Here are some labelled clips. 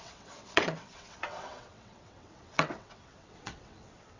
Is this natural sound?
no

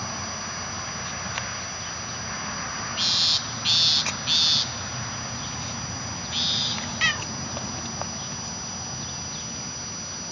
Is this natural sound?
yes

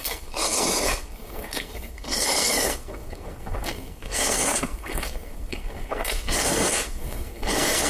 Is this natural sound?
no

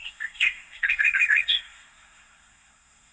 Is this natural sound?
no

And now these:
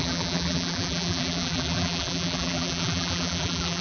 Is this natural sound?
no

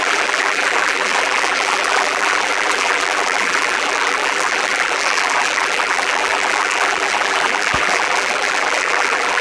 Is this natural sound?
no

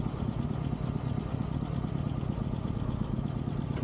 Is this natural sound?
yes